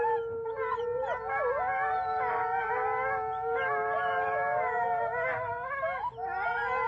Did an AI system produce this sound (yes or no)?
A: no